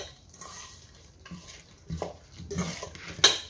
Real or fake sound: real